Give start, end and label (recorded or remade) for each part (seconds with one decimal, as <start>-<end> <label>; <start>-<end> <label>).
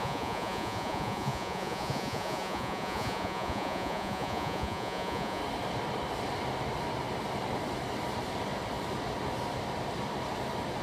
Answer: 0.0-5.4 remade; 5.4-10.8 recorded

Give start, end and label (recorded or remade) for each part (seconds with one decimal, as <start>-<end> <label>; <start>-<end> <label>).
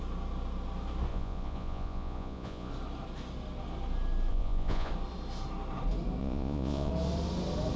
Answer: 0.0-1.1 recorded; 1.1-2.7 remade; 2.7-4.3 recorded; 4.3-4.9 remade; 4.9-6.2 recorded; 6.2-6.9 remade; 6.9-7.8 recorded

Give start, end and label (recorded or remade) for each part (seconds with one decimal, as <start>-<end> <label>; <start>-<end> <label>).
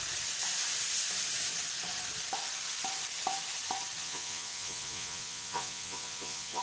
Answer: 0.0-4.0 recorded; 4.0-6.6 remade